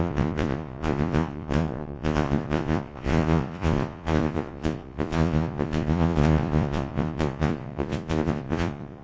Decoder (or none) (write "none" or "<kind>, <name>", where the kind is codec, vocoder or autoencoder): vocoder, Vocos